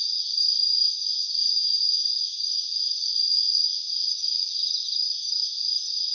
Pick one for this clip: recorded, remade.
remade